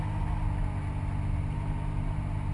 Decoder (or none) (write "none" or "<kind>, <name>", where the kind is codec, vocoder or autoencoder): none